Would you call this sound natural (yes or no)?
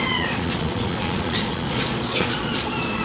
no